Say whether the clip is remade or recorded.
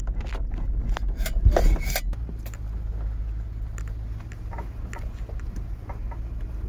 recorded